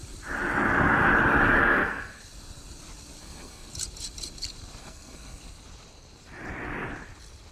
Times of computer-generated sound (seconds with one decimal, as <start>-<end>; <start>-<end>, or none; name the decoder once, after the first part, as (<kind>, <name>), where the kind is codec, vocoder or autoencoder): 1.6-2.2 (codec, SNAC); 3.2-3.7; 4.8-5.4